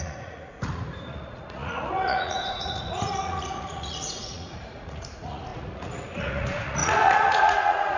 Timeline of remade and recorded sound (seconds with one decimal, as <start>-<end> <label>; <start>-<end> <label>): 0.0-8.0 remade